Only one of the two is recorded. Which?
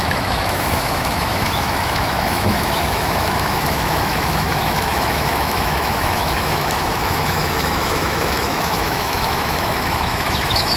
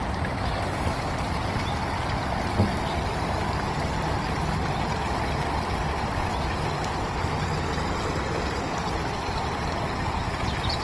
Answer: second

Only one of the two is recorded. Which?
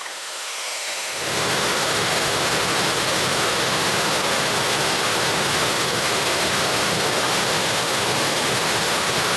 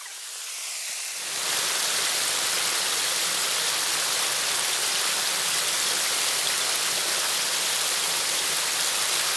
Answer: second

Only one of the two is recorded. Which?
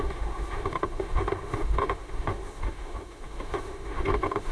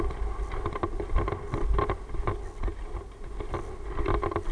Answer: second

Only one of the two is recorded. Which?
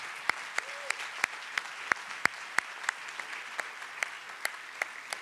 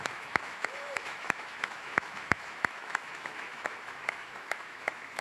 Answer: first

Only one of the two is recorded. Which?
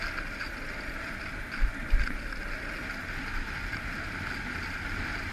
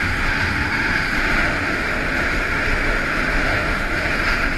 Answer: first